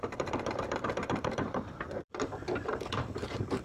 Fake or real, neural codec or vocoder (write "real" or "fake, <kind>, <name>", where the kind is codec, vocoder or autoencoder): fake, vocoder, BigVGAN v2